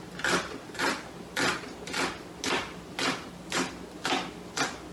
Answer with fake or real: real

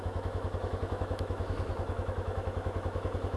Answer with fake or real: fake